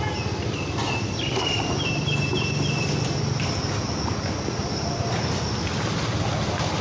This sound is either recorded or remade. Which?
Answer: recorded